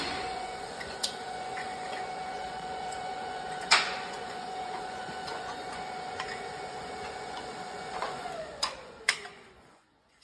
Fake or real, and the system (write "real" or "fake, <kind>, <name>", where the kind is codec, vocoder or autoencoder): fake, vocoder, Vocos